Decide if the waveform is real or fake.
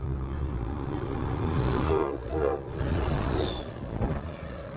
fake